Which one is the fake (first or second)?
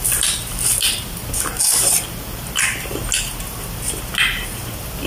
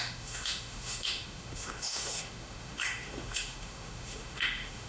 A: second